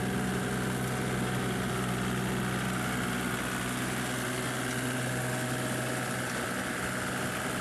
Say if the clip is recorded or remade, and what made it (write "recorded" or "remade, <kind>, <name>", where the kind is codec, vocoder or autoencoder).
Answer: recorded